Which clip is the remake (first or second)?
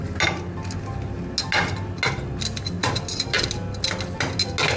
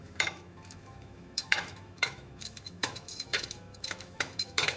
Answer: second